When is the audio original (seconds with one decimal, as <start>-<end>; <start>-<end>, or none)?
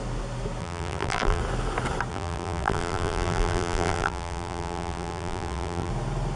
0.0-0.6; 1.4-2.1; 5.9-6.4